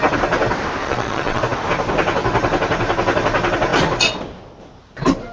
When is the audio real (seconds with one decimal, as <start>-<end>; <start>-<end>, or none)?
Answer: 0.0-0.8; 1.4-5.3